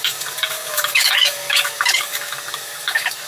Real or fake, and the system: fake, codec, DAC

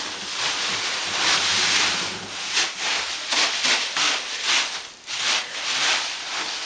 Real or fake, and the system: fake, vocoder, BigVGAN v2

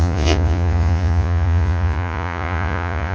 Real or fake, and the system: fake, vocoder, Vocos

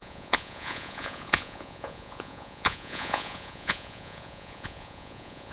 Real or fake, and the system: fake, vocoder, Vocos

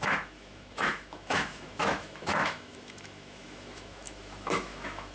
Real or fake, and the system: fake, autoencoder, DAC-VAE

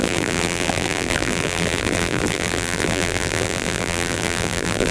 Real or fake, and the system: fake, vocoder, BigVGAN v2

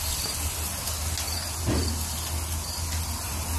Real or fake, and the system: real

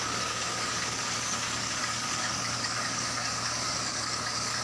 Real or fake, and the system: fake, codec, DAC